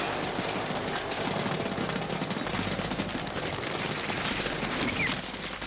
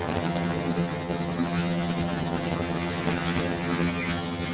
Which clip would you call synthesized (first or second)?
second